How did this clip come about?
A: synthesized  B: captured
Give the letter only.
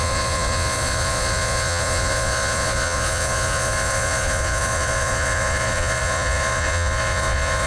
A